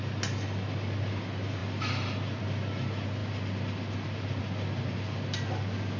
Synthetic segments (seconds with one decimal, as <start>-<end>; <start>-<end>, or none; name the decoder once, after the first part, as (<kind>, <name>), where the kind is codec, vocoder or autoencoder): none